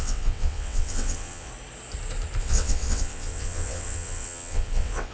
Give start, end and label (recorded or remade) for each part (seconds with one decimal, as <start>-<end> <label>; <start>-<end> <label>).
0.0-1.5 remade; 1.5-2.4 recorded; 2.4-5.1 remade